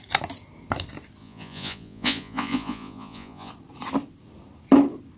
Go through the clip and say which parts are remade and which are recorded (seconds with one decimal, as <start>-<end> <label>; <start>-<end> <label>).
0.0-1.2 recorded; 1.2-3.5 remade; 3.5-5.2 recorded